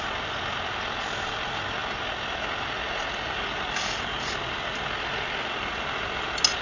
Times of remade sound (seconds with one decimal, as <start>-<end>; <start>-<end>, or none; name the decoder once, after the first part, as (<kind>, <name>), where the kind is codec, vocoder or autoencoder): none